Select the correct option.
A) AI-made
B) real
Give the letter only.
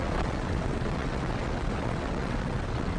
A